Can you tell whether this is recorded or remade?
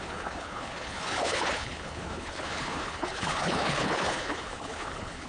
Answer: remade